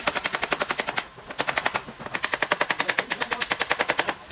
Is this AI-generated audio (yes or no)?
no